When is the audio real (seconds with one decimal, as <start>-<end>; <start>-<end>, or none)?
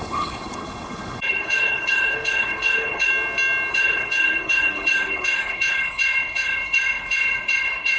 3.1-3.7